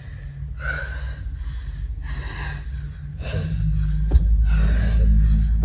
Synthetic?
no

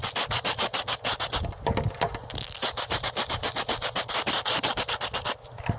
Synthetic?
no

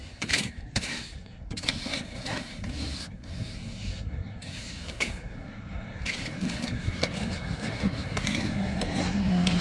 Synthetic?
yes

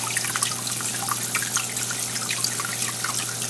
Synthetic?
no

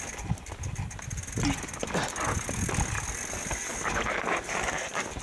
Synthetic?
no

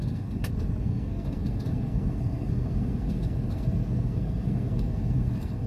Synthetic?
yes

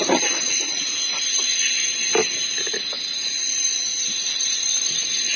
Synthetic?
no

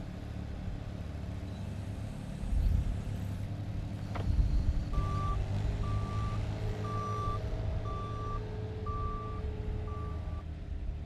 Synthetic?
no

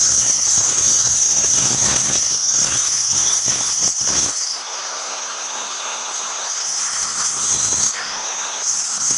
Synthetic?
yes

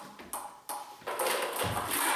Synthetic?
no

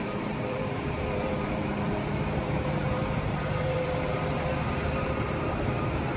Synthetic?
yes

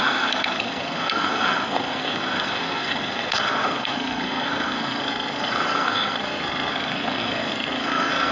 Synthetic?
yes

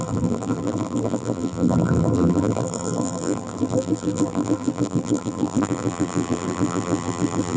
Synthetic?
yes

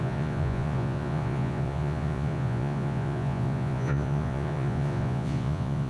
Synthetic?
yes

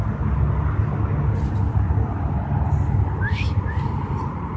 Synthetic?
no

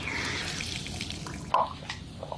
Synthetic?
no